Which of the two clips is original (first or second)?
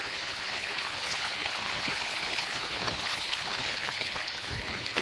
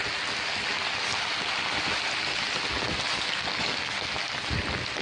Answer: second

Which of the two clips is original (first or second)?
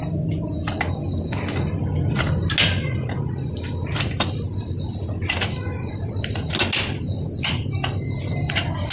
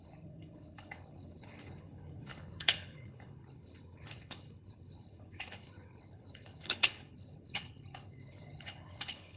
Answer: first